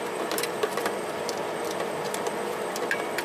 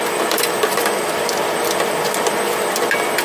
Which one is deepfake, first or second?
first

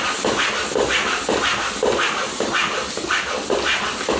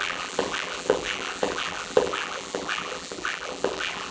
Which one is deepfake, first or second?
second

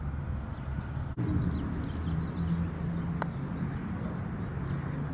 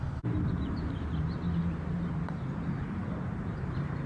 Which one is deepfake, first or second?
second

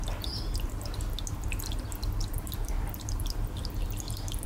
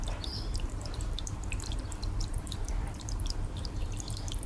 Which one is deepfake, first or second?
second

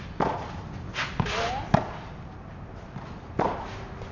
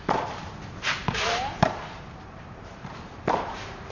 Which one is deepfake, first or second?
second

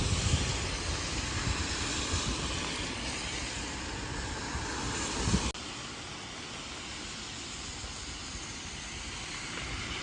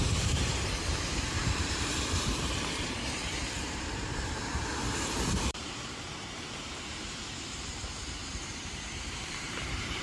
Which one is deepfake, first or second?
second